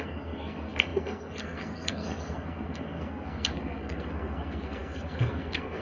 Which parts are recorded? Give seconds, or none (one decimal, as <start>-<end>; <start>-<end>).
none